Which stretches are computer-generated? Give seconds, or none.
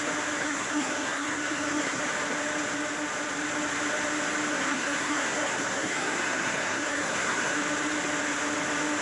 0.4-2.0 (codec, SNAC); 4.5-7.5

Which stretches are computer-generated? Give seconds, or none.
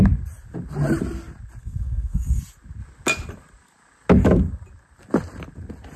1.6-2.4 (codec, SNAC)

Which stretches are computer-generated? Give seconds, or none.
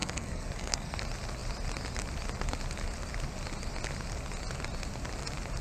0.0-1.0 (codec, SNAC)